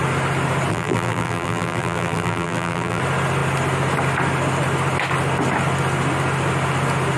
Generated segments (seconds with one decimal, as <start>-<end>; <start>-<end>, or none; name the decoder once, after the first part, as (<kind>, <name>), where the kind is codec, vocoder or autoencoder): 0.7-3.0 (vocoder, BigVGAN v2)